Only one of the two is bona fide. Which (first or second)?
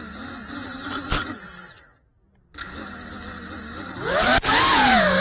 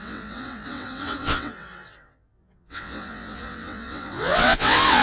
first